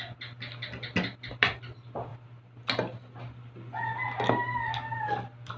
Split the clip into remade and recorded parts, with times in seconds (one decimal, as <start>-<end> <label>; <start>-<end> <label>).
0.0-5.6 recorded